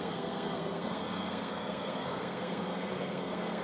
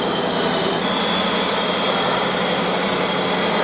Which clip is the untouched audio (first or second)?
second